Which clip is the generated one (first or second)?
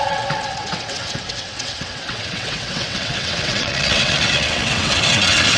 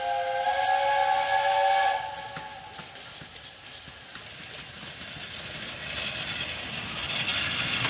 first